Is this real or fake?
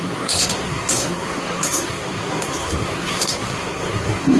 fake